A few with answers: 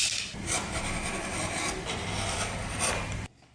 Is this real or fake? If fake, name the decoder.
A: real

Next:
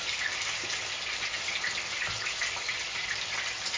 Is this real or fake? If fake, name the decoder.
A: real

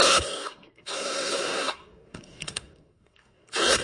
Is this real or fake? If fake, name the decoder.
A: fake, codec, SNAC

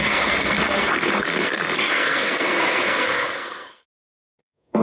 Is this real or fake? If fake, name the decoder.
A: fake, codec, SNAC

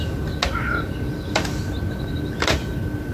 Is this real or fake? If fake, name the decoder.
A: real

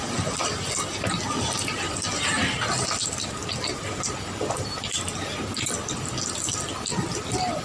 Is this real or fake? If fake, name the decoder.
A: real